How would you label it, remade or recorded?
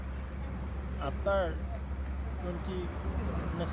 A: recorded